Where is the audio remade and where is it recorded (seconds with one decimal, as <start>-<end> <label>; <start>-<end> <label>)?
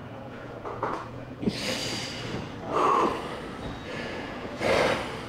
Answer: 0.0-1.4 remade; 1.4-3.8 recorded; 3.8-4.6 remade; 4.6-5.3 recorded